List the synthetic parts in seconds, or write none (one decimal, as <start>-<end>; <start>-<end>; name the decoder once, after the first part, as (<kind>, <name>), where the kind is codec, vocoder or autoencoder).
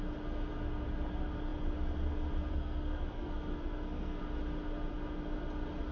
2.5-4.2 (codec, SNAC)